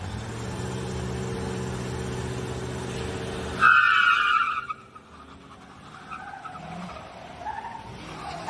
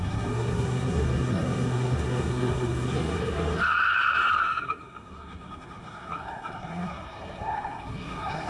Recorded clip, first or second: first